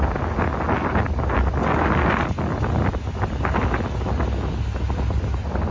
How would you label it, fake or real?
real